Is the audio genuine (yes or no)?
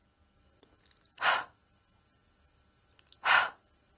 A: yes